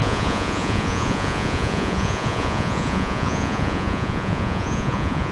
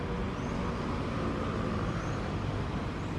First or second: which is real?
second